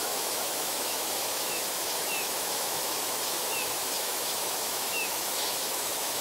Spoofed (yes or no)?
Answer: yes